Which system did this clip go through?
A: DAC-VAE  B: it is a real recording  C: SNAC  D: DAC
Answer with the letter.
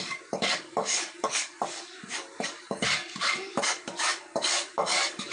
D